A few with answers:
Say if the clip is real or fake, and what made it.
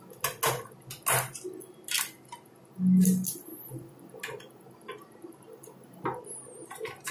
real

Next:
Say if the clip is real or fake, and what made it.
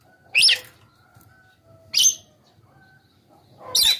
real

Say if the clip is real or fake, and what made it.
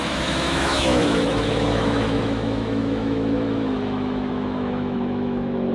fake, autoencoder, DAC-VAE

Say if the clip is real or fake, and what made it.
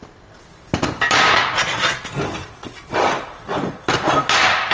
real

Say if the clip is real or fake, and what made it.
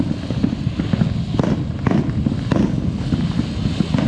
real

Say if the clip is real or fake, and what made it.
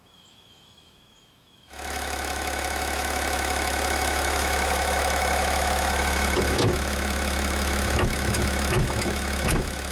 fake, autoencoder, DAC-VAE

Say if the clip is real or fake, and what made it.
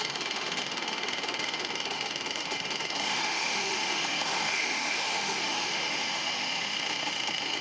fake, autoencoder, DAC-VAE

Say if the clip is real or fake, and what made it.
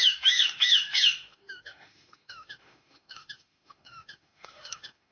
fake, autoencoder, DAC-VAE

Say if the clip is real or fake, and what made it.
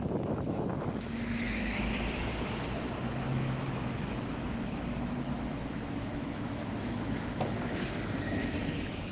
fake, autoencoder, DAC-VAE